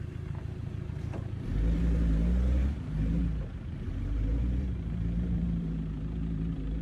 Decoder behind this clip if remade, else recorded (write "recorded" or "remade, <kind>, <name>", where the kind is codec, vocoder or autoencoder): remade, vocoder, BigVGAN v2